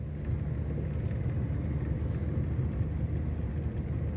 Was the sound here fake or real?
real